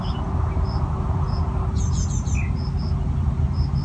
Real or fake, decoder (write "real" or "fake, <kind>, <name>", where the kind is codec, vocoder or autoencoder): real